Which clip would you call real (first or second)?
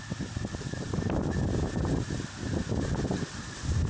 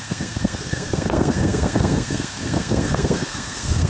first